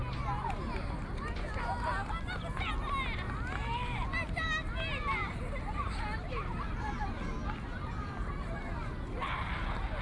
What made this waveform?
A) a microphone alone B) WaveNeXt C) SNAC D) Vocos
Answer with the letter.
A